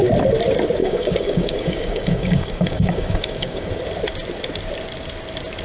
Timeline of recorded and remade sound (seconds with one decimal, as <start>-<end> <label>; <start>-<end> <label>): 0.0-0.8 recorded; 0.8-3.7 remade; 3.7-5.6 recorded